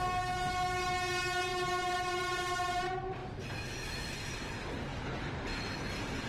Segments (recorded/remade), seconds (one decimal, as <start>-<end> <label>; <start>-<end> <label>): 0.0-6.3 recorded